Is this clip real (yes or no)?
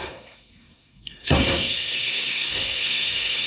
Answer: no